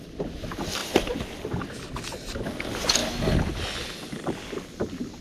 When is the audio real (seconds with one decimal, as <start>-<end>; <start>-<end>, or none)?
0.0-5.2